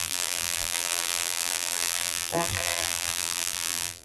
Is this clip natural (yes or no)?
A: no